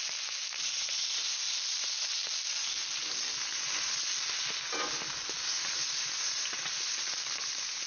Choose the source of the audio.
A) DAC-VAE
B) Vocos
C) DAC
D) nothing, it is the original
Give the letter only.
D